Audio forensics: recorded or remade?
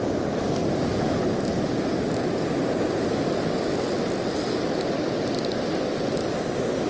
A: recorded